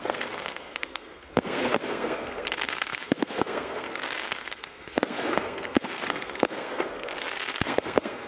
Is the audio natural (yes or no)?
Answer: no